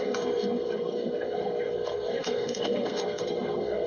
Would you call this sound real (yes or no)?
no